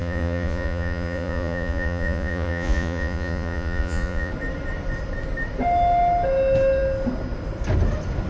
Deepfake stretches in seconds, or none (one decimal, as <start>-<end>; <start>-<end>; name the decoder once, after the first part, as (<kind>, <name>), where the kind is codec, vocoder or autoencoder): 0.0-4.3 (vocoder, Vocos)